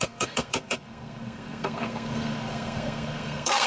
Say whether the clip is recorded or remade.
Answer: remade